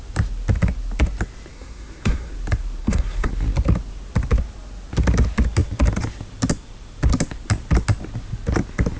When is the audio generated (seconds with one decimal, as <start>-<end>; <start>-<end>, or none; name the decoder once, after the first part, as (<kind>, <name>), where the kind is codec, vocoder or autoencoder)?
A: 1.5-2.3 (codec, SNAC); 2.8-3.3